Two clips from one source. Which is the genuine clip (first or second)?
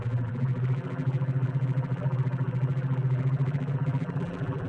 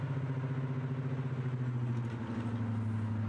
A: second